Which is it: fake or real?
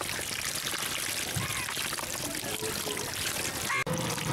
real